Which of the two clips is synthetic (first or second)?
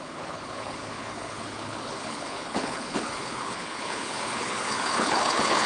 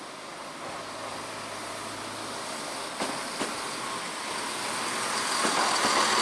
first